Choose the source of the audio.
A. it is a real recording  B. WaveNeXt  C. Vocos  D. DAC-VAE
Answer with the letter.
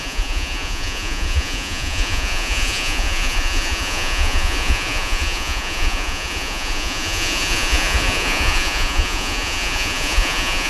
C